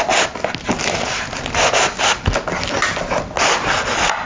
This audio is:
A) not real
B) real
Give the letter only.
B